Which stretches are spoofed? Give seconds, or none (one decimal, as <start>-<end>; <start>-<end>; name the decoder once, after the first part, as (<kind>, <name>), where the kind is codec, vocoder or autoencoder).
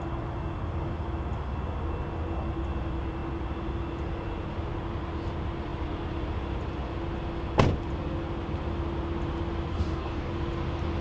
9.7-10.3 (codec, DAC)